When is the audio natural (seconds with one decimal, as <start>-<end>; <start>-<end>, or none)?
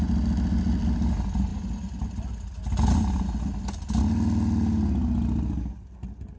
0.0-6.4